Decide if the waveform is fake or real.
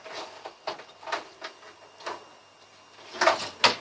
real